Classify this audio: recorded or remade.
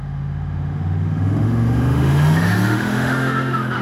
remade